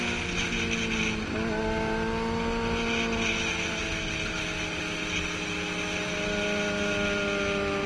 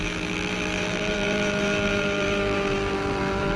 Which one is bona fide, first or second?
first